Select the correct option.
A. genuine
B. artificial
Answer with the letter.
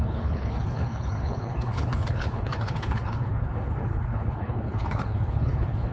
B